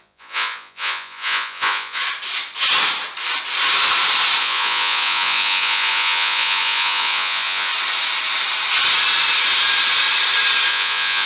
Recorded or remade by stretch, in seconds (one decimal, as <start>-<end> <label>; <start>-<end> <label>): 0.0-2.0 remade; 2.0-4.4 recorded; 4.4-7.7 remade; 7.7-10.7 recorded; 10.7-11.3 remade